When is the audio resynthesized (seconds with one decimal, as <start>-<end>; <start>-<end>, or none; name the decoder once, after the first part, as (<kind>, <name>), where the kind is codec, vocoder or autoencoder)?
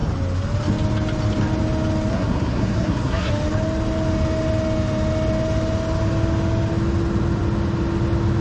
2.1-3.3 (codec, SNAC)